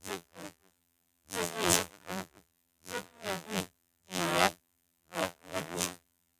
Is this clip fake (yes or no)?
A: yes